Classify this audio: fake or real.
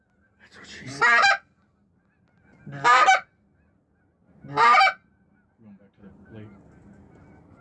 real